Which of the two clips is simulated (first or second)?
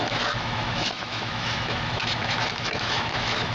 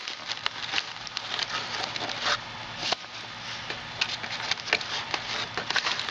first